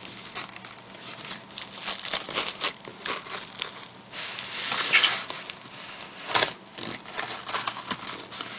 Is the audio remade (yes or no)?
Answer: no